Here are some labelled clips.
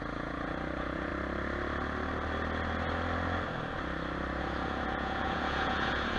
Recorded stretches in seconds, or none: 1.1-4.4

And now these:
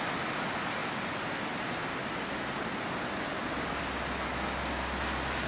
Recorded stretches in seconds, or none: 0.0-5.5